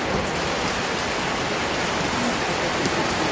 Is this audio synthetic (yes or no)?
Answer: no